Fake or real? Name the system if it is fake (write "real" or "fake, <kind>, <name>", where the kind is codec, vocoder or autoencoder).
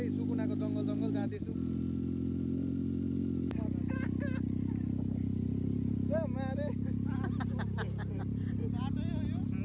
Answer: real